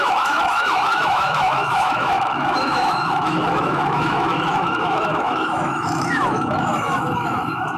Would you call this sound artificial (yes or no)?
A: yes